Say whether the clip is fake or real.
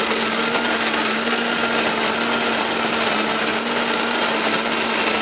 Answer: real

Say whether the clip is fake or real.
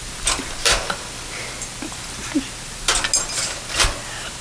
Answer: real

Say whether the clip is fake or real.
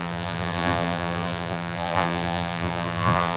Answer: fake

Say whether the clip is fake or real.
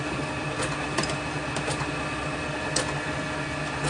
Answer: real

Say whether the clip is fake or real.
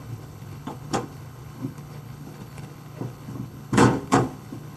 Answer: fake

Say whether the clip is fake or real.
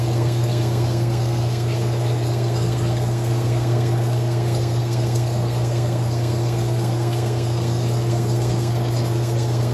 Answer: fake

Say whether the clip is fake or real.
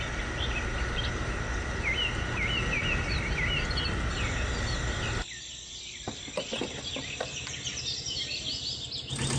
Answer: real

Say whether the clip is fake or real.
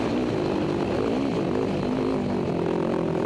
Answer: real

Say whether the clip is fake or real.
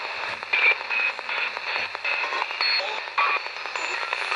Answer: real